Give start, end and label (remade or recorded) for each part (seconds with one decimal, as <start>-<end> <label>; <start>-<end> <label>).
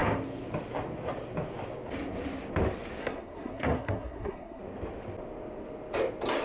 0.0-3.0 recorded; 3.0-4.6 remade; 4.6-6.4 recorded